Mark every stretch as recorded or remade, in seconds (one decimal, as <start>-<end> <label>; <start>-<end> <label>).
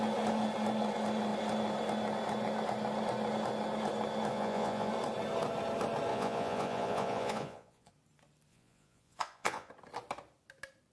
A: 0.0-4.3 recorded; 4.3-4.9 remade; 4.9-6.1 recorded; 6.1-7.9 remade; 7.9-8.5 recorded; 8.5-9.7 remade; 9.7-10.9 recorded